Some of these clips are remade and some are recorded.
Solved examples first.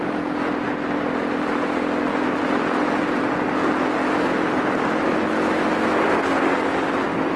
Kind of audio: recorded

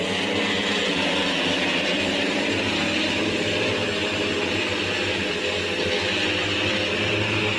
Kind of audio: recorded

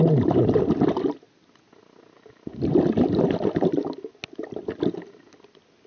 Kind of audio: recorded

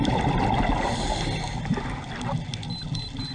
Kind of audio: recorded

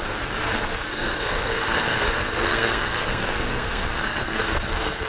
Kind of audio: remade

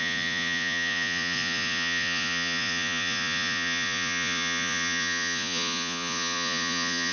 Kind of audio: remade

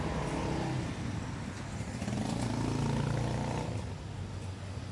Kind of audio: recorded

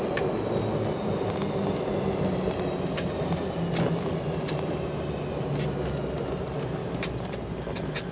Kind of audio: recorded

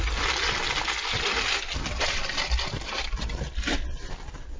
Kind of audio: recorded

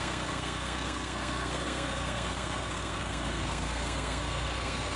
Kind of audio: remade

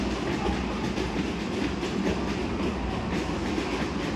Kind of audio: recorded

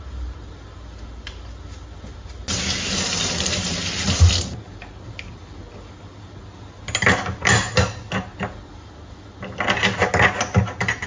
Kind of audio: recorded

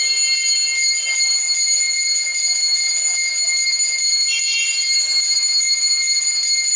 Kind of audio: recorded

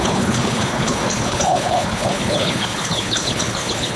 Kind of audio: remade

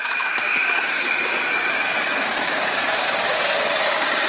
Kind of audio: remade